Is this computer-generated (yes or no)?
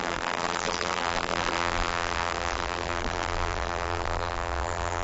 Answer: yes